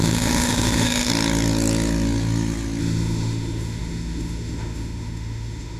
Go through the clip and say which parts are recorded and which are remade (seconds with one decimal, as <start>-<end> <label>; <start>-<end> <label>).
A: 0.0-1.1 remade; 1.1-2.8 recorded; 2.8-5.8 remade